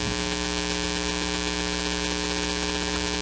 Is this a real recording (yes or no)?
yes